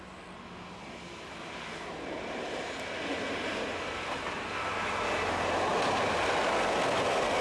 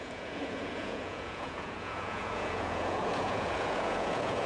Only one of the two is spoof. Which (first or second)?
second